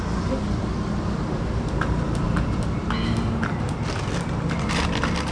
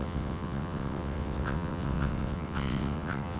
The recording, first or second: first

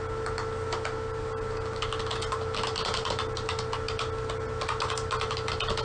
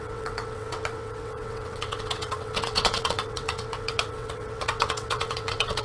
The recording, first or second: first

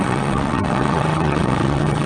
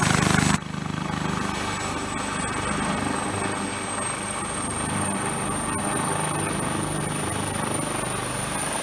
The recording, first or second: second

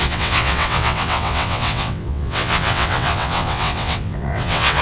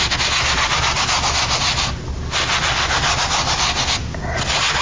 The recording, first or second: second